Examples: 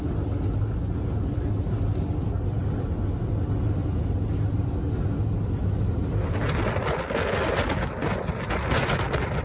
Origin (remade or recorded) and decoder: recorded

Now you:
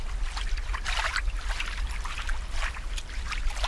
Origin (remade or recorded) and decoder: recorded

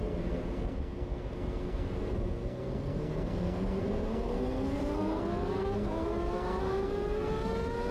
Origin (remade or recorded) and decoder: remade, codec, SNAC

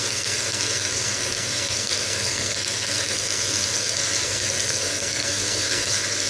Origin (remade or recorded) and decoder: remade, codec, SNAC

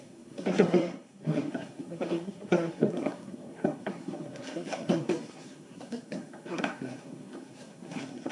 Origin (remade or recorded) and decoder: remade, codec, SNAC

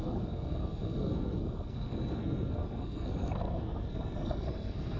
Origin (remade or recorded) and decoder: remade, codec, SNAC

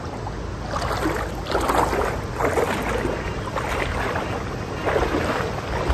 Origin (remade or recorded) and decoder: recorded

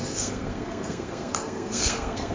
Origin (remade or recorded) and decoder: remade, codec, SNAC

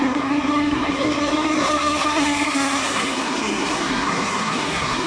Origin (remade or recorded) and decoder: remade, codec, SNAC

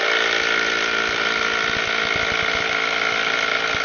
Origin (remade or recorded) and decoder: recorded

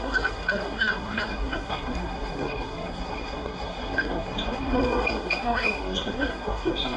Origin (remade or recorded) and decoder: remade, codec, SNAC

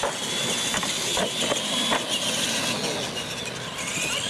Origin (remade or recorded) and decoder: recorded